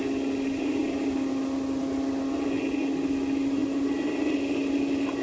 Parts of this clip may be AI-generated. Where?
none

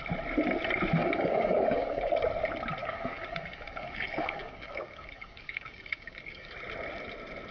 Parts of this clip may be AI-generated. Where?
1.0-2.1 (codec, DAC); 2.8-6.5

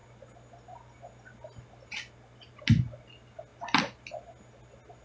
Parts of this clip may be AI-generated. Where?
none